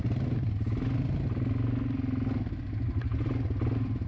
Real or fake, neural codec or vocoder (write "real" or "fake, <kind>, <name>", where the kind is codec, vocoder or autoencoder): real